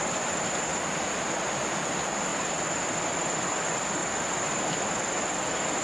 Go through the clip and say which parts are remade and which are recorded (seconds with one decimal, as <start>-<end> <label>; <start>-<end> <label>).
0.0-5.8 recorded